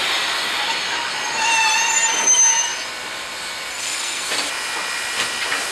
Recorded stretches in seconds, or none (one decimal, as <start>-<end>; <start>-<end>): 0.0-3.7; 4.3-5.7